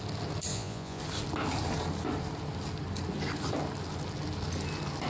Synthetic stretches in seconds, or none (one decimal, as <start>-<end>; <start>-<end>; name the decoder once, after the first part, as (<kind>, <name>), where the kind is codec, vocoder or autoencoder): 0.5-1.0 (vocoder, Vocos)